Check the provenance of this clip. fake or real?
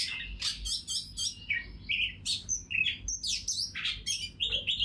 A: real